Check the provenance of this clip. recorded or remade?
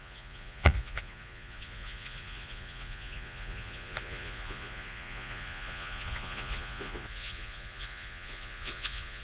remade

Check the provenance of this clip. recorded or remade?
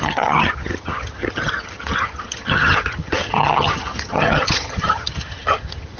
remade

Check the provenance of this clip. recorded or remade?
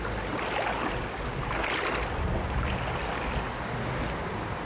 recorded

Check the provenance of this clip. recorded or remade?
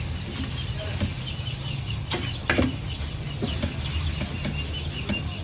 recorded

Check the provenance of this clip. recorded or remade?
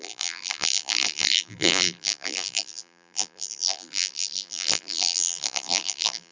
remade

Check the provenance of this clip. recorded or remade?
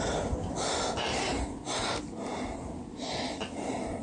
recorded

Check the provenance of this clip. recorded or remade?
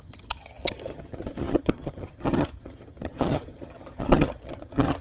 remade